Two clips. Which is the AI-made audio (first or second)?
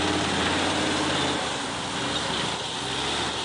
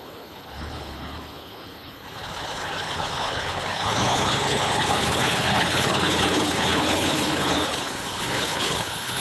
second